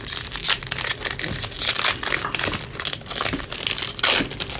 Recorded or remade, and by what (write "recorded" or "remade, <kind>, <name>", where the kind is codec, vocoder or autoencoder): recorded